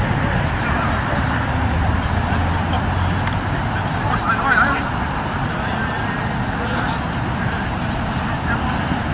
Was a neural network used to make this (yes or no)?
no